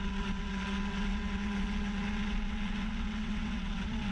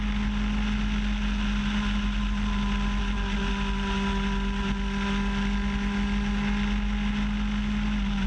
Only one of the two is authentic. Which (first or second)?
second